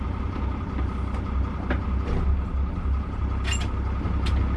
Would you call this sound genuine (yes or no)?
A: yes